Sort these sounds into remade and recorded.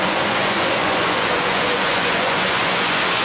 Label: remade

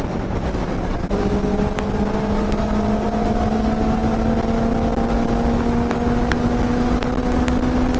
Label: recorded